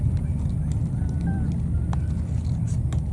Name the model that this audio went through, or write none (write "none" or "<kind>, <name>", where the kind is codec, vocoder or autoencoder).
none